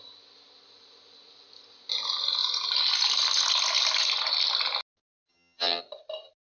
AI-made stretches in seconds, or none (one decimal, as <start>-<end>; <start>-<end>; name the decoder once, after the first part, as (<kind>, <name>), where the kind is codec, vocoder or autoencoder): 5.3-5.8 (vocoder, HiFi-GAN)